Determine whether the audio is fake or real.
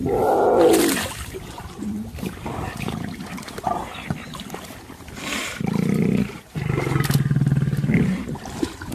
real